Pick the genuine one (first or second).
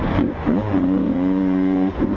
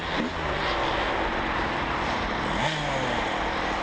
second